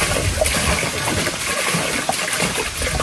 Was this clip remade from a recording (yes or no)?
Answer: no